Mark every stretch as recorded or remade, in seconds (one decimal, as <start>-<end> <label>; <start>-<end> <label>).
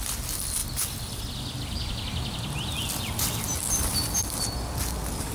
0.0-5.3 recorded